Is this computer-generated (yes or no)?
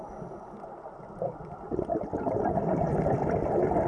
no